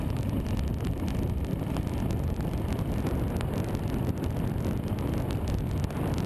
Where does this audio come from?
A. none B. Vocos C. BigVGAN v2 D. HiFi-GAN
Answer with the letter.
A